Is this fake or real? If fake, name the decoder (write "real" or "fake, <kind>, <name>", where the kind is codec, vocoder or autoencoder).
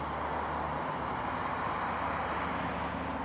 real